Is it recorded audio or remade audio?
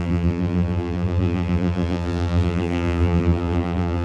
remade